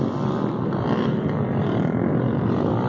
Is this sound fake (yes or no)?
yes